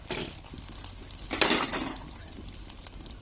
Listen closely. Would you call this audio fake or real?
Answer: real